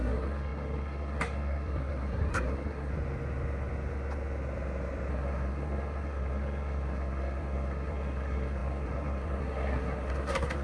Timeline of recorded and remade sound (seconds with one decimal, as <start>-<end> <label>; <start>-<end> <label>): 0.0-2.9 remade; 2.9-5.1 recorded; 5.1-10.6 remade